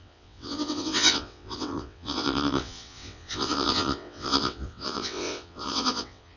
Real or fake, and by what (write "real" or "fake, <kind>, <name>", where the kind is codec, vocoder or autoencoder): fake, vocoder, WaveNeXt